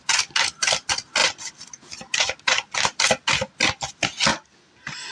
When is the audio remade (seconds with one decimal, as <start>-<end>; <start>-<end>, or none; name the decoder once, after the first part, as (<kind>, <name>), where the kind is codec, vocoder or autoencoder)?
none

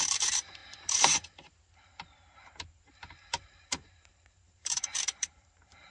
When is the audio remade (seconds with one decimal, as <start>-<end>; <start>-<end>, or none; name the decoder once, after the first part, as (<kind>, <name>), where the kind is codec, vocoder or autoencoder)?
0.0-5.9 (vocoder, BigVGAN v2)

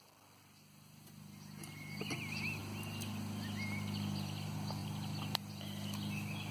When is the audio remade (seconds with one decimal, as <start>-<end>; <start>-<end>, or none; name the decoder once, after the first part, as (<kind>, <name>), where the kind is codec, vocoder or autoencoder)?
none

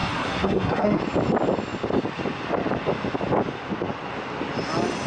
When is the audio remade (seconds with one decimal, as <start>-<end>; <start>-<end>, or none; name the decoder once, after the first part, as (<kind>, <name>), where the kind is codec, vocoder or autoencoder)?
0.0-1.0 (codec, SNAC)

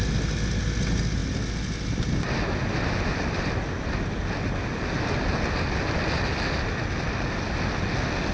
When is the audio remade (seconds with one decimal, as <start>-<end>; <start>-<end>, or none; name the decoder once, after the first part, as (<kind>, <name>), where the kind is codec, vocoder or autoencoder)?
none

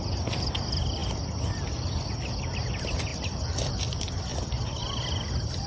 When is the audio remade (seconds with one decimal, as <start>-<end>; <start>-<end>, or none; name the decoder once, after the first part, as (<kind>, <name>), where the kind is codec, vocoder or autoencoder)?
3.1-3.7 (vocoder, BigVGAN v2); 4.3-4.8

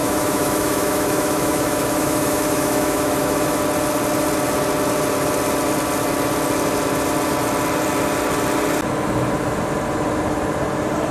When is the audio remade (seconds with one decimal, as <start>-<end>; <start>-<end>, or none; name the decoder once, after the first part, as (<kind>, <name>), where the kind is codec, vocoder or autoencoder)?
0.0-3.6 (autoencoder, DAC-VAE)